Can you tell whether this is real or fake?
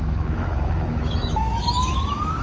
fake